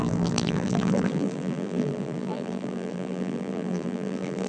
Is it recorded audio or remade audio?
remade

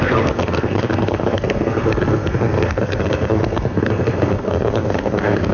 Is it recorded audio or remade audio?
remade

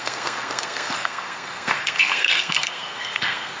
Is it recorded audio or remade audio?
remade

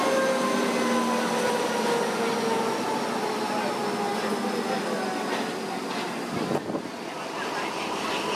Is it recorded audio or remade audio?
recorded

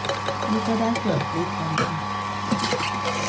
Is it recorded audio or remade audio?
recorded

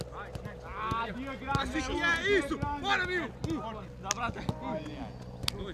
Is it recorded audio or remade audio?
recorded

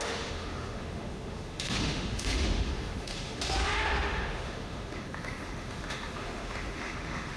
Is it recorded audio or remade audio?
remade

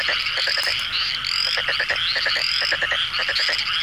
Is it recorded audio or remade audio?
recorded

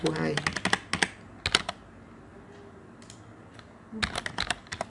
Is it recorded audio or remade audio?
recorded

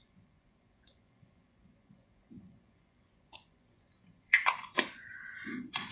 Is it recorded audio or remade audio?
remade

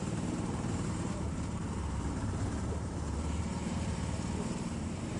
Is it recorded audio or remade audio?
remade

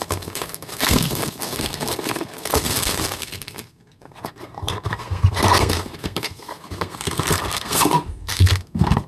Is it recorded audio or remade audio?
remade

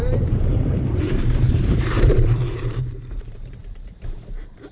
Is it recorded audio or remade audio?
remade